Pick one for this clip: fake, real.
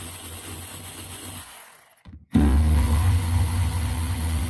fake